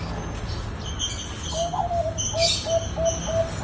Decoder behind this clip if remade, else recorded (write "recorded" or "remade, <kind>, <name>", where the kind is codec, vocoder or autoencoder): recorded